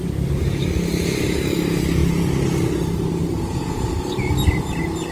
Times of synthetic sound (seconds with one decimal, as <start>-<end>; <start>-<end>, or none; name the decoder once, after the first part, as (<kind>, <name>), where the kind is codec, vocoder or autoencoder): none